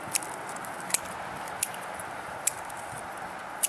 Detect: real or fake fake